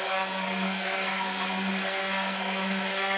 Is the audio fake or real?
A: fake